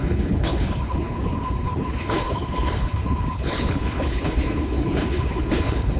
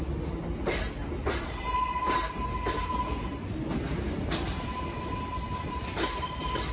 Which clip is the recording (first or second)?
second